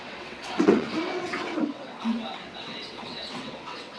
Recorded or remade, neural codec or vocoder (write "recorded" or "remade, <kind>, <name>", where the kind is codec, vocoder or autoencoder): remade, vocoder, WaveNeXt